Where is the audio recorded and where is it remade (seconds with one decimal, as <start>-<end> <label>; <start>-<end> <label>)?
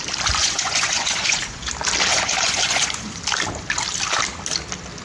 0.0-0.4 recorded; 0.4-1.7 remade; 1.7-2.1 recorded; 2.1-3.2 remade; 3.2-5.0 recorded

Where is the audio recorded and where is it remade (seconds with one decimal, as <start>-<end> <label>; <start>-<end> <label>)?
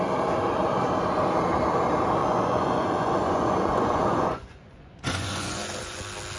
0.0-2.2 recorded; 2.2-6.0 remade; 6.0-6.4 recorded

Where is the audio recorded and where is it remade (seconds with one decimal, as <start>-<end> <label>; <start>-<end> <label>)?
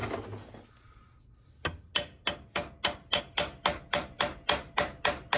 0.0-5.4 recorded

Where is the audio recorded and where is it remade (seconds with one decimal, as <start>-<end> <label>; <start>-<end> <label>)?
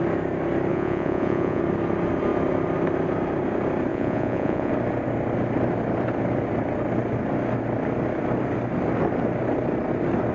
0.0-0.7 recorded; 0.7-1.6 remade; 1.6-3.9 recorded; 3.9-4.7 remade; 4.7-10.3 recorded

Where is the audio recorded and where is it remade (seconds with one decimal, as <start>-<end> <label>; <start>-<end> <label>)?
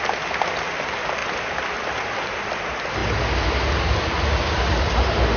0.0-5.4 recorded